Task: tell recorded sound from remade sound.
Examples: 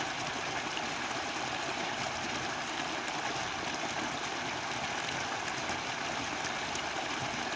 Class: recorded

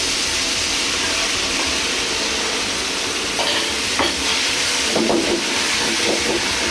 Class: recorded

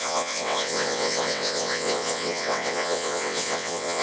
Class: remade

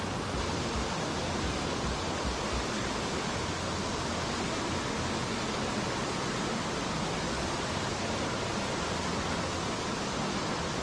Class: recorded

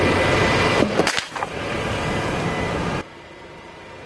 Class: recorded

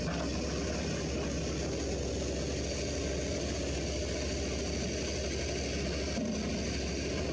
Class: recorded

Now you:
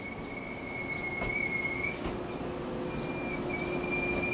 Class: recorded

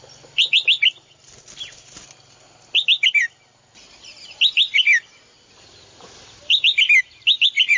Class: recorded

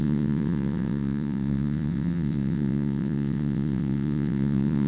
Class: remade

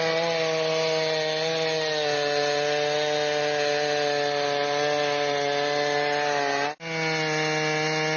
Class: recorded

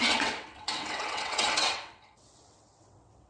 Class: remade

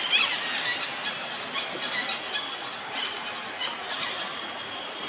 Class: recorded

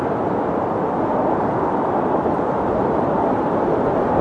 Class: recorded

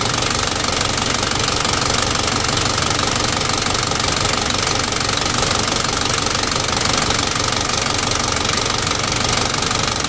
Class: recorded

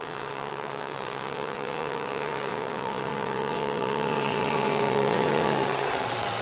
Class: remade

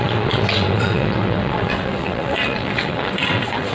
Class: remade